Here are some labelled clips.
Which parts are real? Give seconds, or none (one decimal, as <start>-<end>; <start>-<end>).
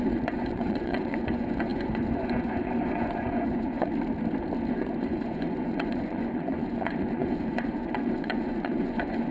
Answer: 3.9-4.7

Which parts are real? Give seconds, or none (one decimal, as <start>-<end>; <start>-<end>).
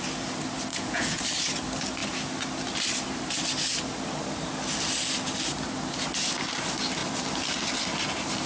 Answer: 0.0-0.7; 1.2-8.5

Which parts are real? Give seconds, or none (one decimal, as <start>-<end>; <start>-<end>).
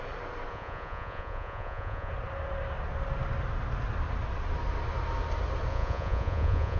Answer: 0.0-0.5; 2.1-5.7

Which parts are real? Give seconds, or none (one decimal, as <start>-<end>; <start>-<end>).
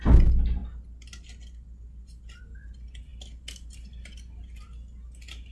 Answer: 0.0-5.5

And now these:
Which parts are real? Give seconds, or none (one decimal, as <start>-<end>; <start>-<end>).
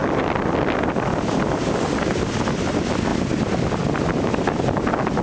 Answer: 0.0-5.2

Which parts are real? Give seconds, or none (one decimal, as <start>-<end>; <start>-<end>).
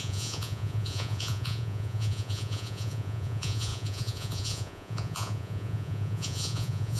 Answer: none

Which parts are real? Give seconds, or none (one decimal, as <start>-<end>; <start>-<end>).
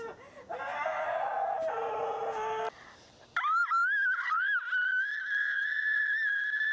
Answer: 0.0-5.4; 6.0-6.7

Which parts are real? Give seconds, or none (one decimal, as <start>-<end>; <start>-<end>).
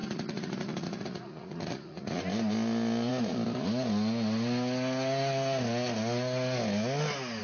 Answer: 2.2-7.4